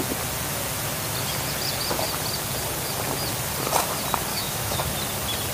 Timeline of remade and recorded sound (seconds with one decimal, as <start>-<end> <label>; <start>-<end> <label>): 0.0-4.3 recorded; 4.3-4.9 remade; 4.9-5.5 recorded